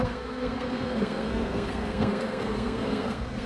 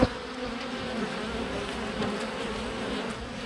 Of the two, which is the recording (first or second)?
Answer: second